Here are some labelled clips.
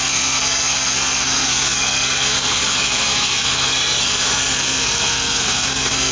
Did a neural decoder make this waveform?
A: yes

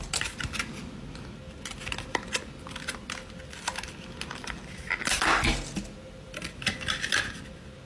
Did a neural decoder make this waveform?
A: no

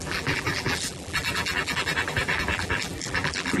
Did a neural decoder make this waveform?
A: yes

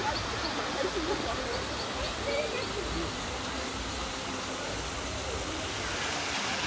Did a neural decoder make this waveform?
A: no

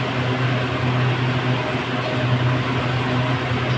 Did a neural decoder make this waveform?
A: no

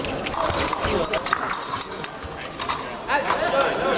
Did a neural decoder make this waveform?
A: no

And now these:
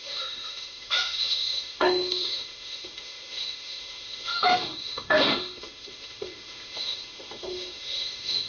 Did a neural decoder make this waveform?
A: yes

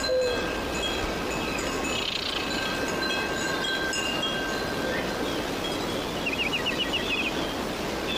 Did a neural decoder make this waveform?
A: no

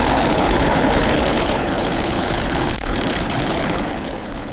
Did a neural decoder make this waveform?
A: yes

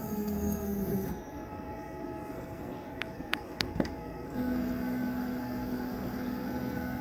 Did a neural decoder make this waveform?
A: yes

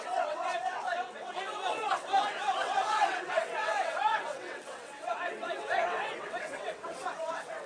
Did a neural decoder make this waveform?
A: yes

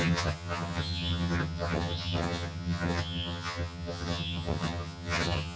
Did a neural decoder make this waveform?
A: yes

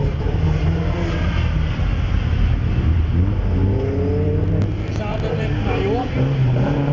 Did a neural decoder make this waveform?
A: no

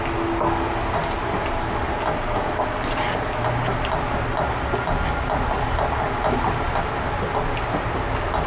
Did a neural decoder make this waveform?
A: no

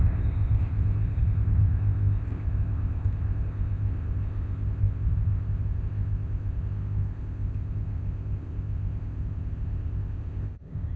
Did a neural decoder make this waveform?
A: yes